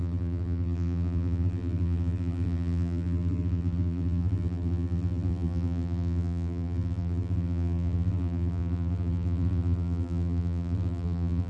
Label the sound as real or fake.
fake